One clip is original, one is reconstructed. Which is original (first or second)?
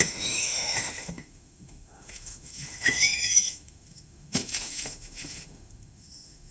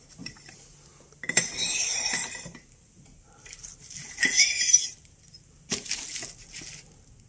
second